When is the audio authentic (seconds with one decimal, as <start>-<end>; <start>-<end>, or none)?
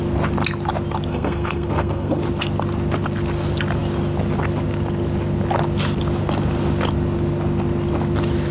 0.0-1.1; 2.2-8.5